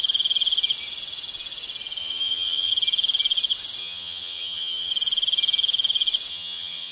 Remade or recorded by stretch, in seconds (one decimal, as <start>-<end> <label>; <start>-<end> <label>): 0.0-2.0 recorded; 2.0-2.7 remade; 2.7-3.8 recorded; 3.8-4.9 remade; 4.9-6.3 recorded; 6.3-6.9 remade